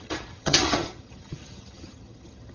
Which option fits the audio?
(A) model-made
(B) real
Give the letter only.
A